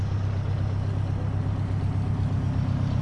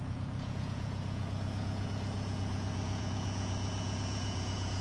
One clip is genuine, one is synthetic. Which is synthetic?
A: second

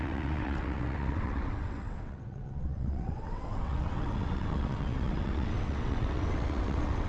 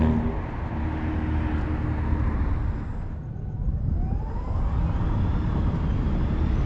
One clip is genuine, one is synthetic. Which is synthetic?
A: first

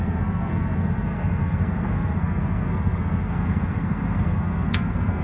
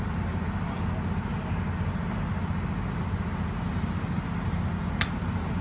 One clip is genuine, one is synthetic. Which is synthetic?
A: first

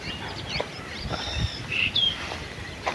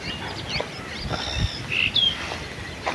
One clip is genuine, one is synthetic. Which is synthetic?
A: first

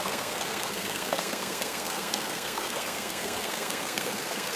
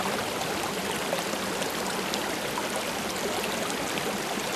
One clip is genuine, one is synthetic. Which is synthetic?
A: first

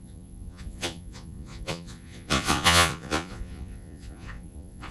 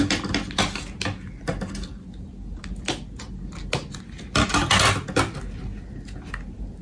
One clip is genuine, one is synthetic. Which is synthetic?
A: first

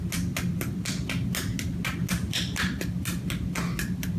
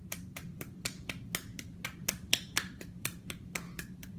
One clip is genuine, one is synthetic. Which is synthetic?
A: second